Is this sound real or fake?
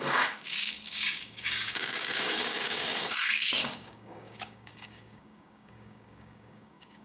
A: fake